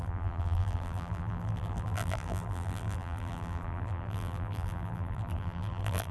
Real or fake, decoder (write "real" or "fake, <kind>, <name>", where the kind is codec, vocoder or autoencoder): fake, vocoder, BigVGAN v2